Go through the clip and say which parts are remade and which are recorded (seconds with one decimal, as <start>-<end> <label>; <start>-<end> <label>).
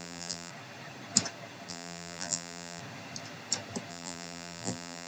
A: 0.0-0.5 remade; 0.5-1.7 recorded; 1.7-2.8 remade; 2.8-3.9 recorded; 3.9-5.1 remade